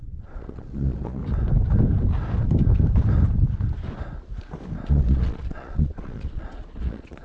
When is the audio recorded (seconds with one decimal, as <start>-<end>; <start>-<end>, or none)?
1.2-4.9